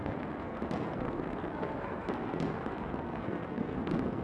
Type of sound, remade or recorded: remade